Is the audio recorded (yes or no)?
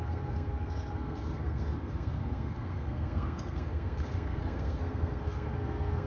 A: no